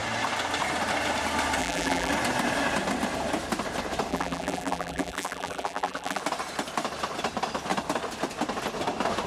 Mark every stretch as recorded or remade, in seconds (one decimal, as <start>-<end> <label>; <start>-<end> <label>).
0.0-1.6 recorded; 1.6-2.1 remade; 2.1-4.1 recorded; 4.1-6.2 remade; 6.2-9.3 recorded